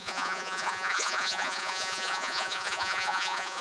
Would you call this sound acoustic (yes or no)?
no